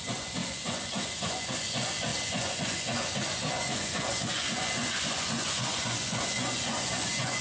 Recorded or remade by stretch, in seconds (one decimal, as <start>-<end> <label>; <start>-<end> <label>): 0.0-7.4 remade